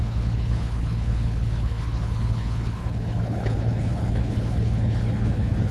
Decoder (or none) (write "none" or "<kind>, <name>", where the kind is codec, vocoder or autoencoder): codec, HILCodec